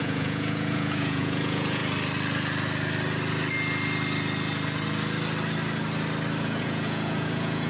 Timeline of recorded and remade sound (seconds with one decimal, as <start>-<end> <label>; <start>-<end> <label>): 0.0-1.8 remade; 1.8-6.4 recorded; 6.4-7.7 remade